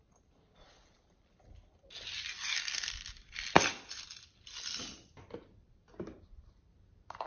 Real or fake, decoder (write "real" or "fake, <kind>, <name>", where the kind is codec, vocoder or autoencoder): fake, vocoder, BigVGAN v2